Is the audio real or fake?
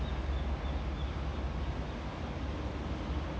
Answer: real